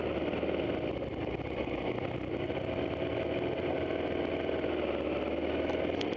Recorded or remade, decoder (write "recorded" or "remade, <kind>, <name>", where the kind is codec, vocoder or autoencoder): recorded